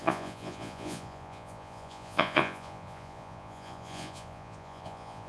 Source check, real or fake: fake